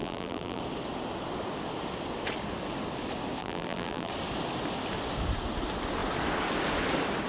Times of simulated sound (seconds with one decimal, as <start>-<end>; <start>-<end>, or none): 0.0-0.6; 3.4-4.1